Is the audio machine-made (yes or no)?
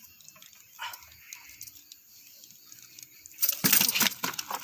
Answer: no